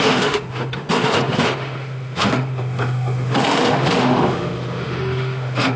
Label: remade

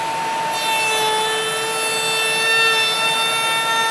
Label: recorded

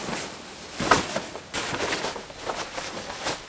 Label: recorded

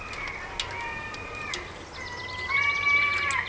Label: recorded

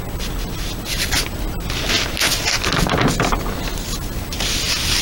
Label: recorded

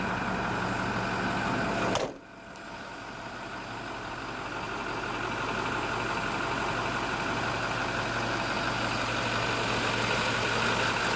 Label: recorded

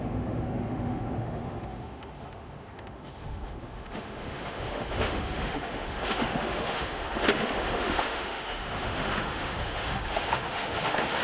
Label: remade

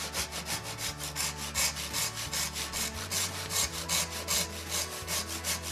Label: recorded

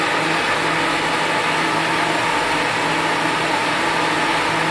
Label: recorded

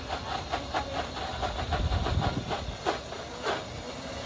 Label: recorded